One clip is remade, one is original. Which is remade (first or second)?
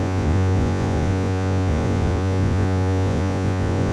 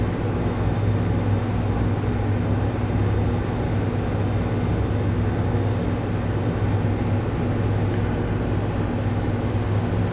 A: first